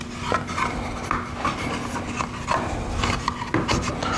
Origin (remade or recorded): recorded